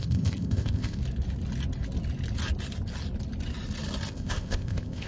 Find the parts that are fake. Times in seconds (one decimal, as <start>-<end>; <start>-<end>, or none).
0.0-1.0; 4.1-5.1